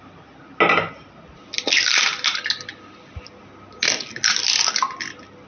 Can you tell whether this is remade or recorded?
recorded